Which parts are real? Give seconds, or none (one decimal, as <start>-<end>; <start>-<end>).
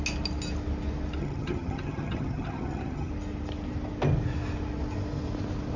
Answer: 0.0-1.2; 3.1-5.8